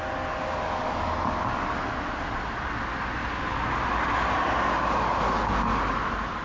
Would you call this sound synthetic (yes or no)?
no